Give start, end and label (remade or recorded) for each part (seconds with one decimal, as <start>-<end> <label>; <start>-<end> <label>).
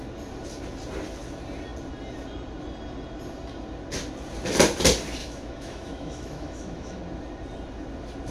0.0-5.2 recorded; 5.2-7.0 remade; 7.0-8.3 recorded